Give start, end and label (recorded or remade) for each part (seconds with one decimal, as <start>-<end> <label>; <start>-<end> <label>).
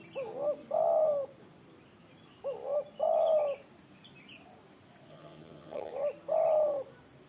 0.0-5.1 recorded; 5.1-5.9 remade; 5.9-7.3 recorded